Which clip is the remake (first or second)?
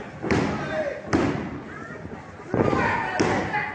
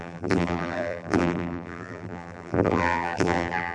second